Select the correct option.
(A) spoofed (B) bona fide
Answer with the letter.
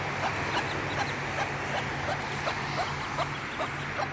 B